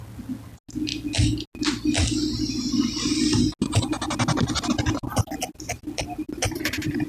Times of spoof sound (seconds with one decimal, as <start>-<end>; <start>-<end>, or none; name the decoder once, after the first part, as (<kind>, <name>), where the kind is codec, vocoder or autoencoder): none